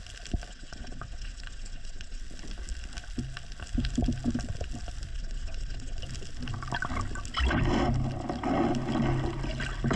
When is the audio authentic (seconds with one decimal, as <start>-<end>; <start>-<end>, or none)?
0.0-0.5; 2.2-5.1; 6.0-10.0